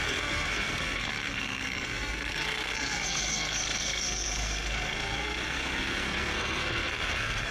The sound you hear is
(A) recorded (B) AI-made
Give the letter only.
B